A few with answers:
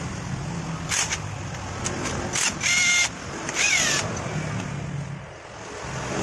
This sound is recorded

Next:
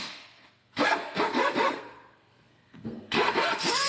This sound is remade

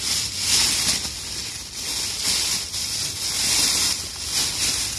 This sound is recorded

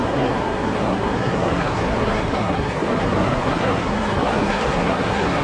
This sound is remade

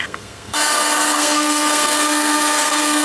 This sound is remade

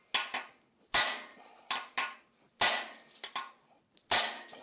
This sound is recorded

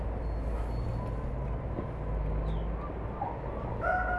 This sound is recorded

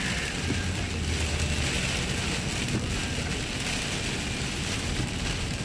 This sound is recorded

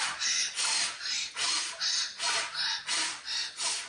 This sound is recorded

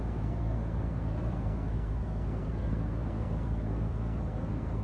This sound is remade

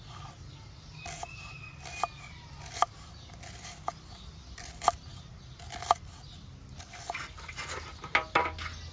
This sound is recorded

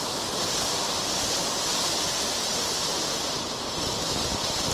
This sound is recorded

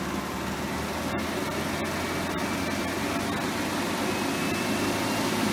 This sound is recorded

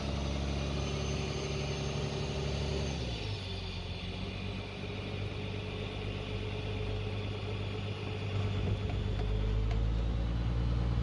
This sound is recorded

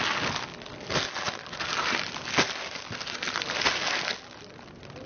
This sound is recorded